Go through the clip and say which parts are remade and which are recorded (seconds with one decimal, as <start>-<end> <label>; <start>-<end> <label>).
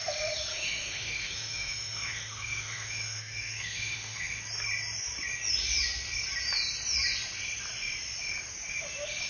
0.0-0.5 recorded; 0.5-4.4 remade; 4.4-9.3 recorded